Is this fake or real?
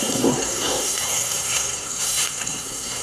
fake